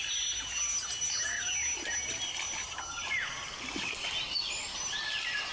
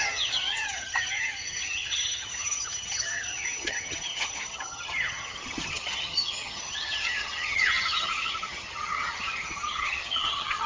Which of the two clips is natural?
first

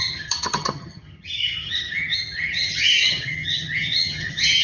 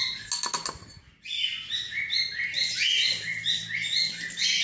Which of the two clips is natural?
second